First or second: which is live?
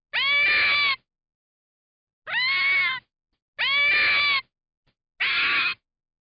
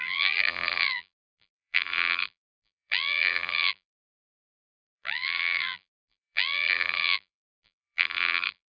first